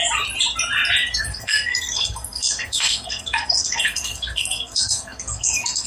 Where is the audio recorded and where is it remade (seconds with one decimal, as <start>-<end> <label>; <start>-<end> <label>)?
0.0-1.2 recorded; 1.2-5.9 remade